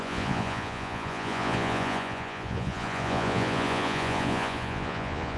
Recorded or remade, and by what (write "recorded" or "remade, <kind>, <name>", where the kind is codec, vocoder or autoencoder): remade, vocoder, Vocos